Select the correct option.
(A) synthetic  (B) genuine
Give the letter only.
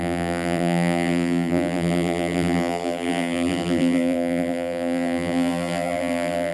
A